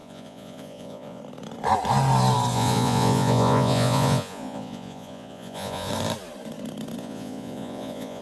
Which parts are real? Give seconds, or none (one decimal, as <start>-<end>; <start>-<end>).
1.2-2.5; 5.9-7.0